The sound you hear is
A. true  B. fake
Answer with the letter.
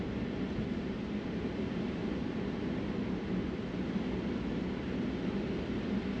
A